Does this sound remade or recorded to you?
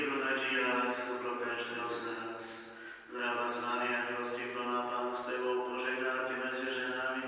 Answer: recorded